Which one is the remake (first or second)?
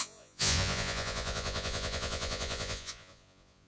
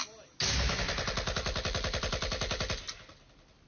first